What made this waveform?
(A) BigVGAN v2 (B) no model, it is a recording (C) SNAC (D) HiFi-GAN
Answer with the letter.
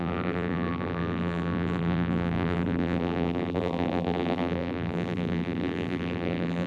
A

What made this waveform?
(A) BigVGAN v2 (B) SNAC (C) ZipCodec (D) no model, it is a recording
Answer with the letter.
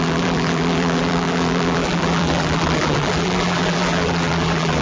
A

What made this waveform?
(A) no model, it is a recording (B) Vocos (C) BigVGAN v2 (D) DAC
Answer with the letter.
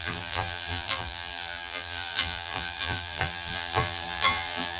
C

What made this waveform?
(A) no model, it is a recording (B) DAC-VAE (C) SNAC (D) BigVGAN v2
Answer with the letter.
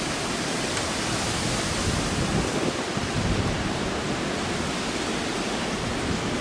D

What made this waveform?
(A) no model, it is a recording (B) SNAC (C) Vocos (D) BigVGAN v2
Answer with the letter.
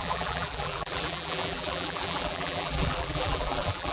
D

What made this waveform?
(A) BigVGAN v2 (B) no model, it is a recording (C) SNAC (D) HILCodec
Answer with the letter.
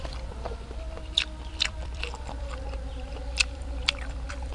A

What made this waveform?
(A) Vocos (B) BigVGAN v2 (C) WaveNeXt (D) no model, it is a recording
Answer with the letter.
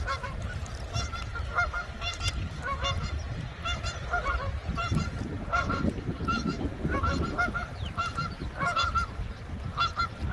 D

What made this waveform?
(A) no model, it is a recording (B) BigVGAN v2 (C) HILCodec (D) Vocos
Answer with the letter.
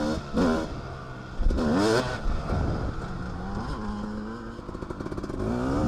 A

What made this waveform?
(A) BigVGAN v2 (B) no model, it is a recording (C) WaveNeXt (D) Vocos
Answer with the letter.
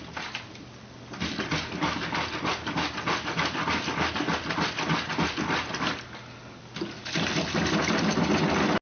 B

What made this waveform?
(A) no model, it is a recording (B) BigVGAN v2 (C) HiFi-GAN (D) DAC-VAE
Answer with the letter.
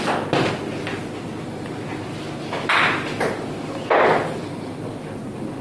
A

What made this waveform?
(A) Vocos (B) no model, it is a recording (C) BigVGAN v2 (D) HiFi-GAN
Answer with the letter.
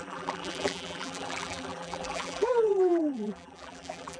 C